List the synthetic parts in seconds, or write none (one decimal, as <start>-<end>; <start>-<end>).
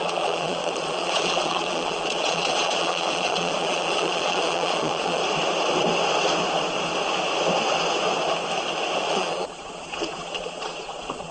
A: 0.0-5.2; 9.1-11.3